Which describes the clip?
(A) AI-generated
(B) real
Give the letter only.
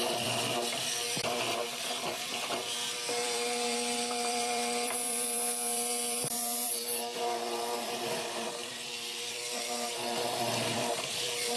A